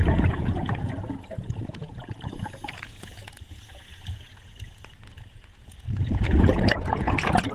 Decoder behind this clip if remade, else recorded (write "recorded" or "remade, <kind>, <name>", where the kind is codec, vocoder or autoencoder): remade, vocoder, Vocos